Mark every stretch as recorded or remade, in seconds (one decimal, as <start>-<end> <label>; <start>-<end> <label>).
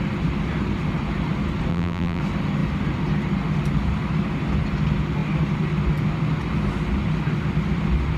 0.0-1.7 recorded; 1.7-2.2 remade; 2.2-8.2 recorded